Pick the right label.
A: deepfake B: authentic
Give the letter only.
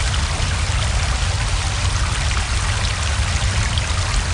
B